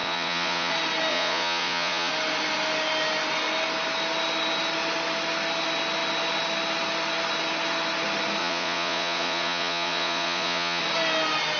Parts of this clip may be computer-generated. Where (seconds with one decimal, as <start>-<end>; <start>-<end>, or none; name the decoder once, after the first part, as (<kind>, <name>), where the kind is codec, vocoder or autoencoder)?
0.0-0.7 (vocoder, Vocos); 1.1-2.1; 8.4-10.8